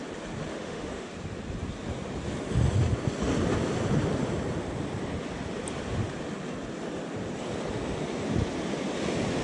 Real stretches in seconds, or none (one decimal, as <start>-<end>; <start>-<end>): 0.0-0.5; 1.1-9.4